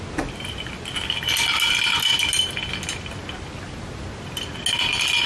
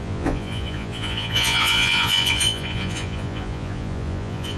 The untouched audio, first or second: first